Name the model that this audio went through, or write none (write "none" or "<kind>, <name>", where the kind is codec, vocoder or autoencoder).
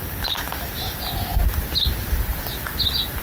none